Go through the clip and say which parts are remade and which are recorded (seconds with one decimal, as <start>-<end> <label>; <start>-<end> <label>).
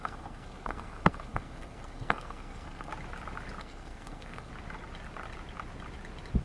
0.0-2.9 remade; 2.9-3.6 recorded; 3.6-4.5 remade; 4.5-6.4 recorded